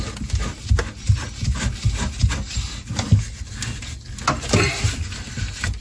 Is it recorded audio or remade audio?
recorded